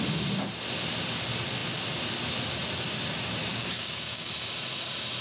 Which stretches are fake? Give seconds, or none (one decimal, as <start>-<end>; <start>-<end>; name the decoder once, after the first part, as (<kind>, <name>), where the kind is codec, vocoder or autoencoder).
3.5-4.3 (codec, DAC)